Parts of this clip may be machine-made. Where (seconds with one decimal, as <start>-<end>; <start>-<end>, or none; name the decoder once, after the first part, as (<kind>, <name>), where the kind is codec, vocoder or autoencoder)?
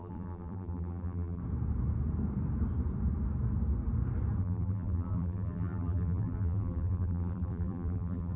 0.0-1.4 (vocoder, BigVGAN v2); 4.4-8.4